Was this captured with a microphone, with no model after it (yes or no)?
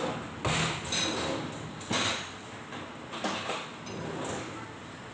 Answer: yes